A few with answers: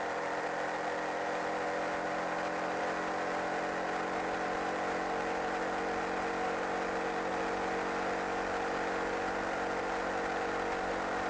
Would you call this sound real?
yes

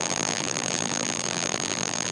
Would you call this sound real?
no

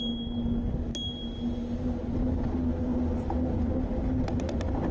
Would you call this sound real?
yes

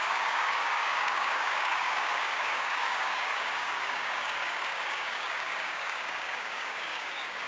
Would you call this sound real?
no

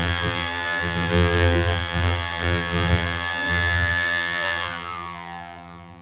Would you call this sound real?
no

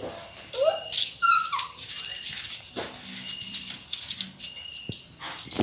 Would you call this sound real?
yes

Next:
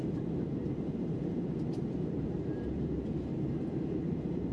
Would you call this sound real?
no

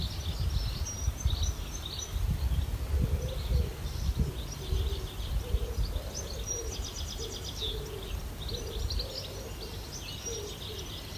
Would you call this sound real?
yes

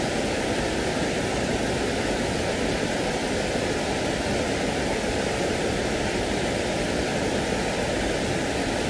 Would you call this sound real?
no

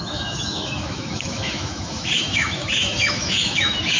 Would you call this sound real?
no